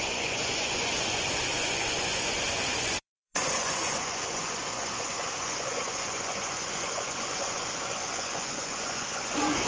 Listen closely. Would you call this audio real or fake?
fake